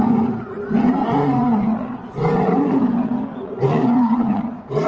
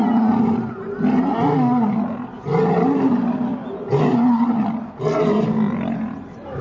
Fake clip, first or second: first